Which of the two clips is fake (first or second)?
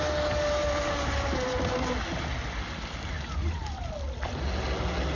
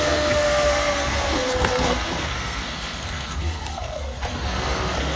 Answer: second